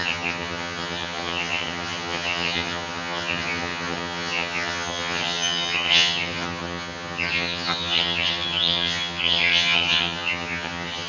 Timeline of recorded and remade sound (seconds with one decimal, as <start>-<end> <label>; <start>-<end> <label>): 0.0-11.1 remade